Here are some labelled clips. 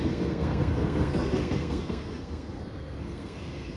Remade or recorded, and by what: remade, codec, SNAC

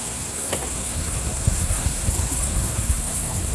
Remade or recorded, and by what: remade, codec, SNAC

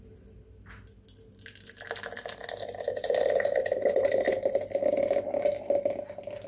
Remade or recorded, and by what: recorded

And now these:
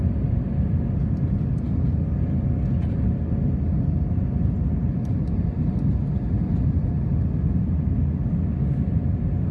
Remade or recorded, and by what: recorded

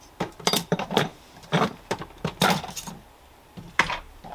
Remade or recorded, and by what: remade, vocoder, BigVGAN v2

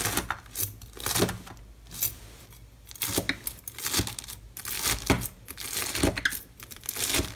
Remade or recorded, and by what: recorded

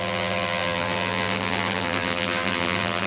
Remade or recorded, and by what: remade, vocoder, BigVGAN v2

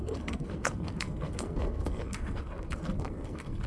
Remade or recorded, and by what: remade, codec, SNAC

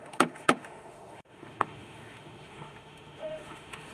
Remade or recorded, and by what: remade, autoencoder, DAC-VAE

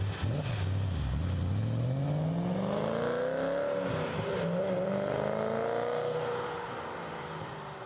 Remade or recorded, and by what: recorded